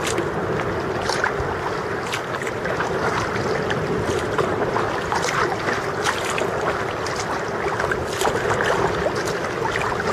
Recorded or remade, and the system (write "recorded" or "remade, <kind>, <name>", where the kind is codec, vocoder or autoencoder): recorded